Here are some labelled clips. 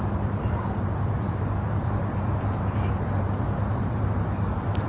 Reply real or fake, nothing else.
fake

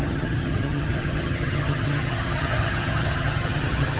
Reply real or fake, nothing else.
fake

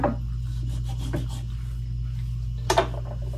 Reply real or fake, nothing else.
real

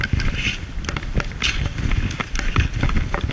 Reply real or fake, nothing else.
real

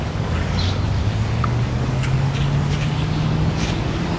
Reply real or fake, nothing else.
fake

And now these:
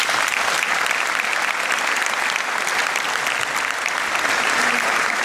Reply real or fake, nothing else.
real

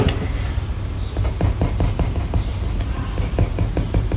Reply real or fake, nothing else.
real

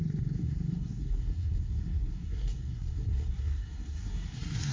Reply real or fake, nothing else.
fake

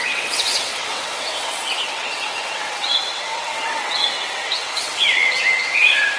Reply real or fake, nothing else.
fake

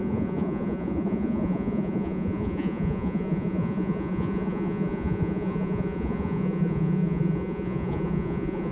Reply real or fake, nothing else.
fake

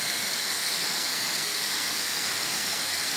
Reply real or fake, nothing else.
fake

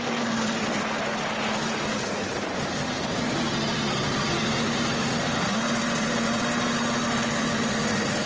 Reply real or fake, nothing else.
fake